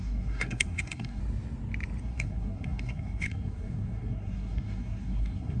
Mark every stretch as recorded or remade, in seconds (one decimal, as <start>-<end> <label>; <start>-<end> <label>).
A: 0.0-1.2 remade; 1.2-2.0 recorded; 2.0-5.6 remade